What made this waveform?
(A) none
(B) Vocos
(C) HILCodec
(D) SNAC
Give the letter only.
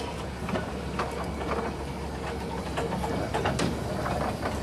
A